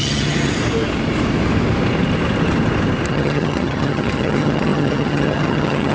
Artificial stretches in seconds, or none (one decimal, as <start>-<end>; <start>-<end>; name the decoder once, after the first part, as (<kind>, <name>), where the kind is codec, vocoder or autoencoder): 0.0-0.5 (vocoder, HiFi-GAN); 3.1-5.9